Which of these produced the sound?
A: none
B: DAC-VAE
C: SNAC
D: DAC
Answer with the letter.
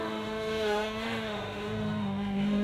B